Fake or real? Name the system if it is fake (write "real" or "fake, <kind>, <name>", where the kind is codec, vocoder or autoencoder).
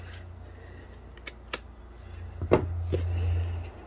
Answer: real